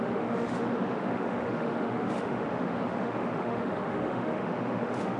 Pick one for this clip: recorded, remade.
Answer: remade